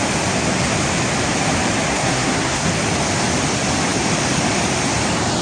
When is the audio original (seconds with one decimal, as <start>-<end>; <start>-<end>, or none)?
0.0-1.9; 2.7-5.4